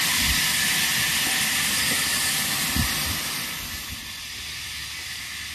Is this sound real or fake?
real